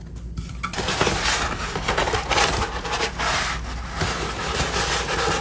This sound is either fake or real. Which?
real